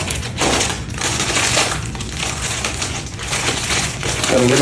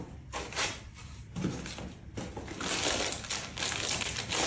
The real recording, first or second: second